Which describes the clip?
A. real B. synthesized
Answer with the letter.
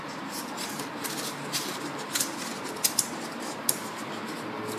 A